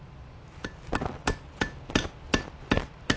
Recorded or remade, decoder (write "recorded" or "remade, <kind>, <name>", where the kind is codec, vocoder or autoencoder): recorded